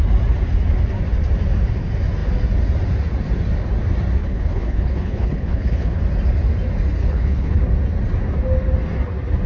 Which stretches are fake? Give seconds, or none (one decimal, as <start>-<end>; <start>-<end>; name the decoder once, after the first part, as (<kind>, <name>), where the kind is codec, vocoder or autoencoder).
4.2-6.0 (codec, HILCodec); 7.0-7.6